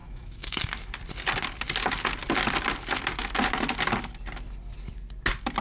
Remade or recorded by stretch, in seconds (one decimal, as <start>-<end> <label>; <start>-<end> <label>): 0.0-0.6 remade; 0.6-5.6 recorded